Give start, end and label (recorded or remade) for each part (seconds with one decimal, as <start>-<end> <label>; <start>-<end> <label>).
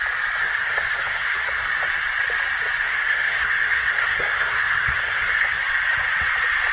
0.0-0.4 recorded; 0.4-1.6 remade; 1.6-2.8 recorded; 2.8-5.6 remade; 5.6-6.7 recorded